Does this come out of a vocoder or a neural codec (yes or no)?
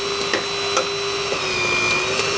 no